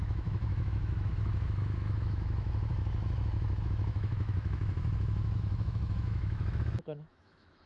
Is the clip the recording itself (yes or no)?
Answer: no